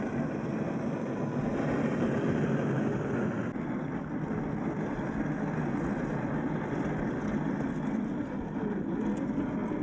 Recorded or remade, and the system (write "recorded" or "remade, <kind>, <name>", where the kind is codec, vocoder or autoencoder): recorded